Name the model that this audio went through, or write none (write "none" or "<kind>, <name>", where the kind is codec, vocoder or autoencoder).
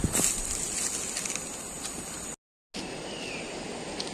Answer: none